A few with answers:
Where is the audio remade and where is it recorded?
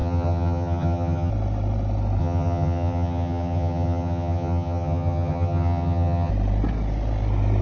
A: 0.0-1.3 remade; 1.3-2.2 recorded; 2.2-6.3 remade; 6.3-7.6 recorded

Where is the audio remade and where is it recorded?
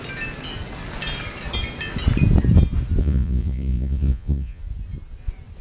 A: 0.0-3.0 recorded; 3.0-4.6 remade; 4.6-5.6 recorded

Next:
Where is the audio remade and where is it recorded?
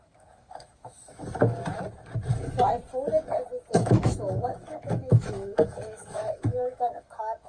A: 0.0-1.0 remade; 1.0-3.7 recorded; 3.7-7.5 remade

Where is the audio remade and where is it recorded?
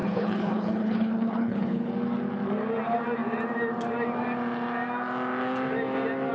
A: 0.0-1.9 remade; 1.9-6.3 recorded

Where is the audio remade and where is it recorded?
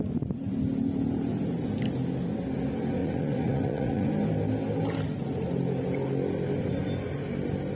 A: 0.0-3.0 recorded; 3.0-4.1 remade; 4.1-7.8 recorded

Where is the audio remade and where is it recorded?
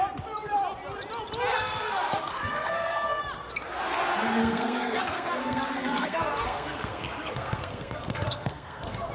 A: 0.0-1.5 recorded; 1.5-3.2 remade; 3.2-4.4 recorded; 4.4-9.1 remade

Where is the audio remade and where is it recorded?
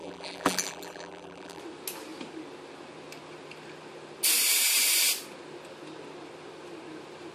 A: 0.0-1.6 remade; 1.6-7.3 recorded